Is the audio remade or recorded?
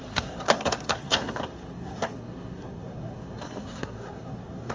remade